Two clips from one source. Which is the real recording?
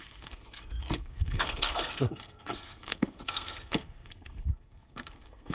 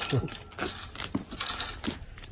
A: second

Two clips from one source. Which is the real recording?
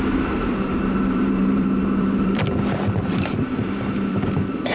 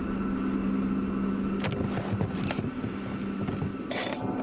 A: second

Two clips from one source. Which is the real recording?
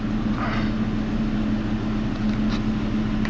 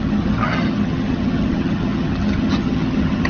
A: first